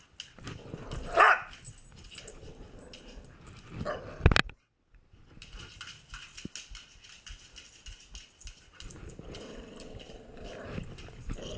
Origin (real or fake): real